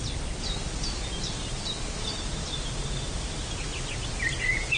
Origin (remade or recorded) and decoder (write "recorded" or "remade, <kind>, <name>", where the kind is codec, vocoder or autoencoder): recorded